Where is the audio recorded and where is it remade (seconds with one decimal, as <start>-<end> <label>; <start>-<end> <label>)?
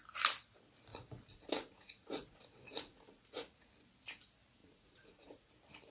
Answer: 0.0-0.9 recorded; 0.9-3.7 remade; 3.7-4.6 recorded; 4.6-5.5 remade; 5.5-5.9 recorded